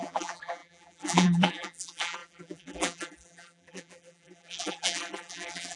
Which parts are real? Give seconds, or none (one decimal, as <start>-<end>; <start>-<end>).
none